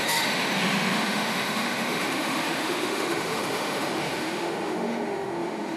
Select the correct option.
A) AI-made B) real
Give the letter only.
A